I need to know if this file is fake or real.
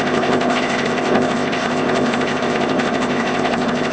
fake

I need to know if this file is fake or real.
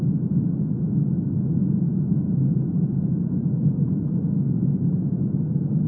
real